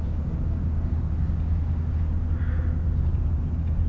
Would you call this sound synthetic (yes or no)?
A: no